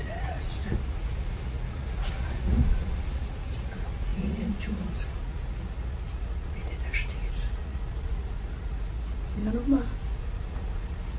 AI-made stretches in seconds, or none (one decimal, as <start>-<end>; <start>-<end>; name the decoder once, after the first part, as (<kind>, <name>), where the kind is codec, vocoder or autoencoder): 0.0-9.4 (vocoder, Vocos); 10.0-11.2